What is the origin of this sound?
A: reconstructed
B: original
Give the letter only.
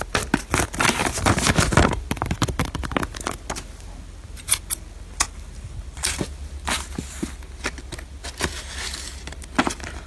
B